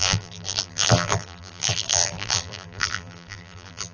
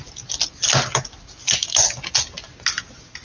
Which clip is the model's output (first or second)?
first